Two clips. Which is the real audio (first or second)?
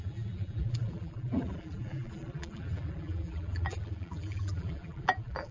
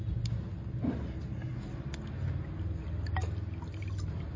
second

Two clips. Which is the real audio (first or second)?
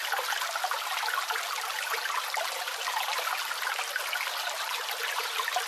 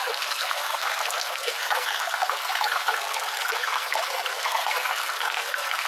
first